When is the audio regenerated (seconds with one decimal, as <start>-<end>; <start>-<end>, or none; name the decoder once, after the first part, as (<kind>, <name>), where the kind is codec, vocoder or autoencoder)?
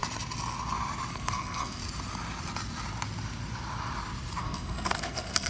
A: 1.1-1.8 (codec, SNAC); 4.4-5.5